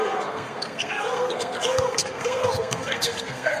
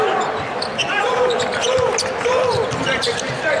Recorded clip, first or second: second